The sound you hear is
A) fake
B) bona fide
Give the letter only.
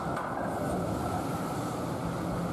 B